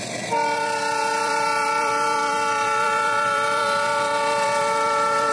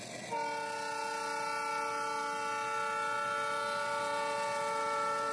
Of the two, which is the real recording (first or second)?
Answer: second